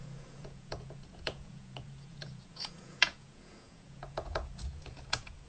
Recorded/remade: remade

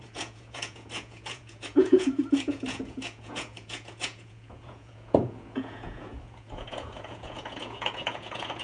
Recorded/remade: remade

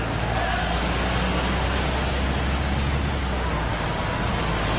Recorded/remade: recorded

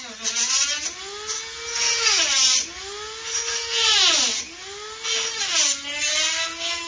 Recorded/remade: recorded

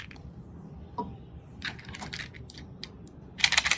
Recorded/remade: remade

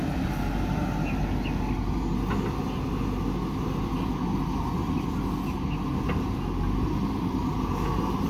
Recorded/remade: recorded